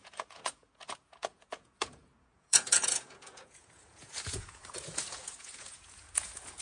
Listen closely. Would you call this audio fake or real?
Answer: fake